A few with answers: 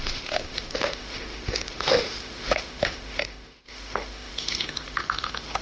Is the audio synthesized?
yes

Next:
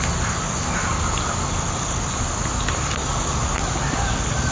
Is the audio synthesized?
no